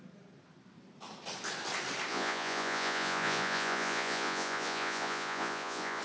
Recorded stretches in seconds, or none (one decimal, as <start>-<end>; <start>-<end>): 0.0-2.1